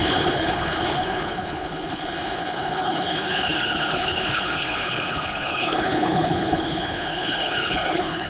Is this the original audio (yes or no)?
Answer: no